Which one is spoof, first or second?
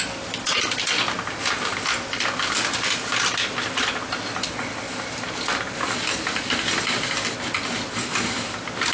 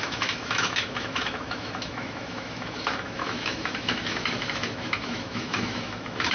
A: second